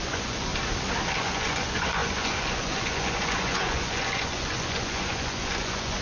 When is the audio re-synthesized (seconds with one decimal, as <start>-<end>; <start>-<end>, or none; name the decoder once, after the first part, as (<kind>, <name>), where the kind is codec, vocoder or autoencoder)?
0.0-0.5 (vocoder, Vocos); 1.2-6.0